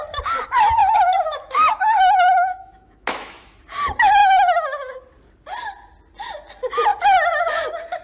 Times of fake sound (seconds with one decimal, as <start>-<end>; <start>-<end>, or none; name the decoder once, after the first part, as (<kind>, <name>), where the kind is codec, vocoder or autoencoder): 0.8-3.6 (autoencoder, DAC-VAE); 4.2-4.9